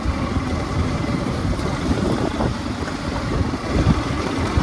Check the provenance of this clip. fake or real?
fake